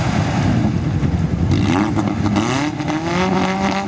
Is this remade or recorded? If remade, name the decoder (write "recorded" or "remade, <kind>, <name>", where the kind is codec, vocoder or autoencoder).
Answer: recorded